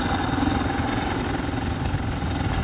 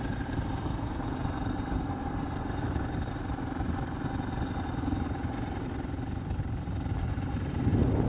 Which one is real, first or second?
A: first